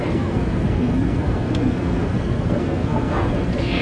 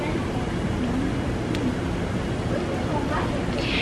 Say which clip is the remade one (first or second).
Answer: first